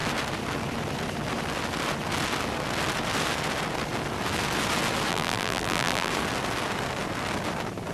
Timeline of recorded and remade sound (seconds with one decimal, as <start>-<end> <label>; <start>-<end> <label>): 0.0-5.1 recorded; 5.1-6.1 remade; 6.1-7.9 recorded